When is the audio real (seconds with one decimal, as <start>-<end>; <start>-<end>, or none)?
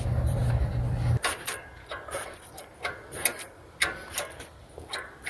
0.0-5.3